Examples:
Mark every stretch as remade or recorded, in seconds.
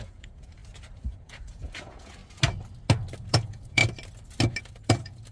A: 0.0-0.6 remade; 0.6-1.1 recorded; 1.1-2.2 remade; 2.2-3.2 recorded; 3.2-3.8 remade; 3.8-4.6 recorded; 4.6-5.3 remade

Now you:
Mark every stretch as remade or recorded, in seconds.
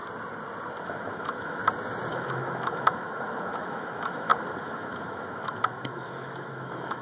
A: 0.0-0.8 recorded; 0.8-1.6 remade; 1.6-2.1 recorded; 2.1-7.0 remade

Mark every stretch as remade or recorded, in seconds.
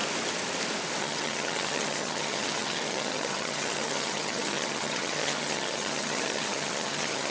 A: 0.0-1.0 recorded; 1.0-7.3 remade